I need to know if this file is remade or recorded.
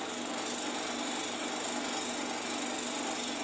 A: recorded